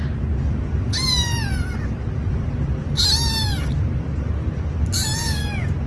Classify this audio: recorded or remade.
recorded